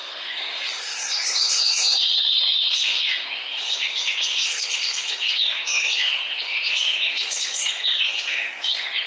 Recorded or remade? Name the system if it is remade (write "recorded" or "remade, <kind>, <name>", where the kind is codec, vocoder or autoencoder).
remade, codec, SNAC